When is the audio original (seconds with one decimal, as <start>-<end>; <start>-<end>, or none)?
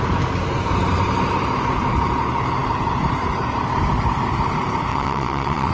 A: 0.0-4.9